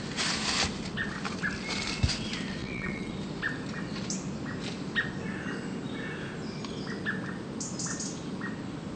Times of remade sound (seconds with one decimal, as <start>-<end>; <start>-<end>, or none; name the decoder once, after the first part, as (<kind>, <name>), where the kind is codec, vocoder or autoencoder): 2.6-3.1 (vocoder, WaveNeXt)